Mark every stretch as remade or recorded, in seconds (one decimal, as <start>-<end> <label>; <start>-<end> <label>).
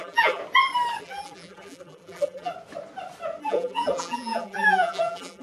0.0-0.4 remade; 0.4-1.0 recorded; 1.0-2.5 remade; 2.5-3.4 recorded; 3.4-5.4 remade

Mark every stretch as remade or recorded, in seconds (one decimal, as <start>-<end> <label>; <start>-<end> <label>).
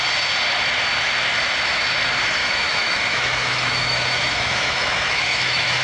0.0-2.4 recorded; 2.4-5.8 remade